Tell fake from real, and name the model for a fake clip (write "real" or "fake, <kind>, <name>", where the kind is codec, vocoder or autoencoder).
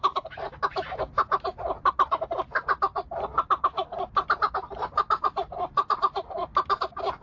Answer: fake, vocoder, BigVGAN v2